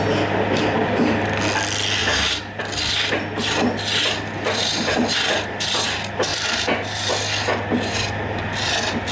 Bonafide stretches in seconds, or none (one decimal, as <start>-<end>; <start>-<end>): 0.0-2.0; 2.6-6.3; 7.1-9.1